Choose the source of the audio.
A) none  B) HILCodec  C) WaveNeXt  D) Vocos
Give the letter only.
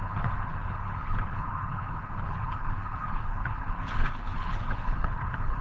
B